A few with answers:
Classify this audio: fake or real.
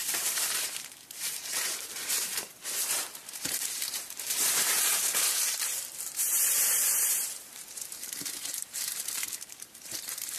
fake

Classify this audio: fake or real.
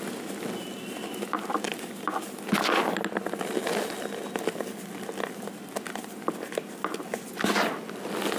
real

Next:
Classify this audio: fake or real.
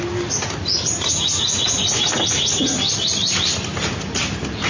real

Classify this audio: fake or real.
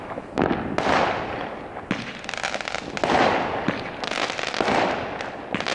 real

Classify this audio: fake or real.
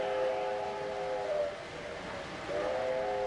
real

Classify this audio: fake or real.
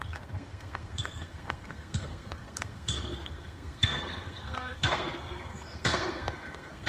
fake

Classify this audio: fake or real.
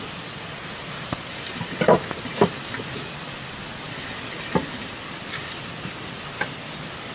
real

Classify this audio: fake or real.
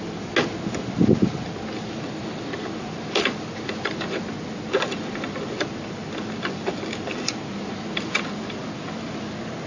real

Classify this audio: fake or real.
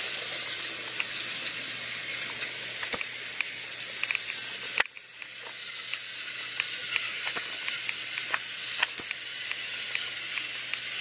real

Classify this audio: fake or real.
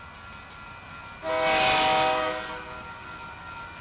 real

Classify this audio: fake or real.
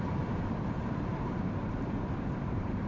fake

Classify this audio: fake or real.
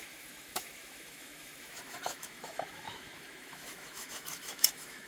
fake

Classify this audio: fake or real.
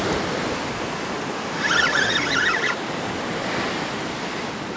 real